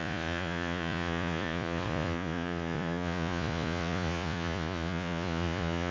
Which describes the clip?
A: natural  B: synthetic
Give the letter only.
B